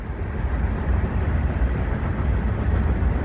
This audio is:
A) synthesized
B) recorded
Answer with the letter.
A